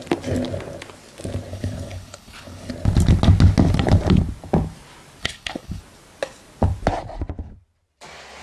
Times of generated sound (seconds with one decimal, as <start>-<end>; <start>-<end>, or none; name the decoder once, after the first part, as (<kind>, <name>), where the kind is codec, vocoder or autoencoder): 1.5-2.7 (codec, HILCodec); 5.2-5.8

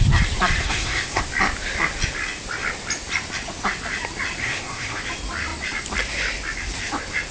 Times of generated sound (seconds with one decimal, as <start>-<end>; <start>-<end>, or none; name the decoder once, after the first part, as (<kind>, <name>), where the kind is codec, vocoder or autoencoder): 0.6-1.2 (codec, SNAC); 4.4-5.0

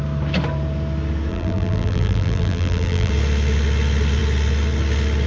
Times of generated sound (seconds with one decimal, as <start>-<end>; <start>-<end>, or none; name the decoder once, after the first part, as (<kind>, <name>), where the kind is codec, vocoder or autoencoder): 1.3-3.1 (vocoder, BigVGAN v2)

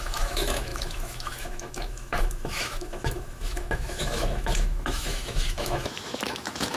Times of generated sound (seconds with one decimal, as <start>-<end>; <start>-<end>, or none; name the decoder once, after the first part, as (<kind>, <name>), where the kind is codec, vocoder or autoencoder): 0.0-6.8 (autoencoder, DAC-VAE)

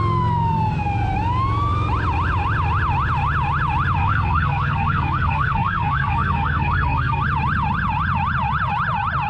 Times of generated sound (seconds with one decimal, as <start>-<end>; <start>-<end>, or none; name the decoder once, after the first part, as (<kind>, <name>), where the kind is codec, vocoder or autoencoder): 4.0-7.2 (codec, SNAC)